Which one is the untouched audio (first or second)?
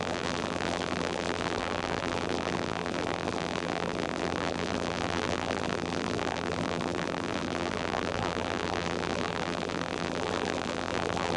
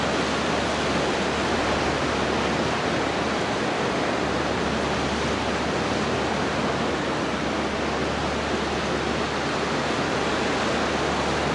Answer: second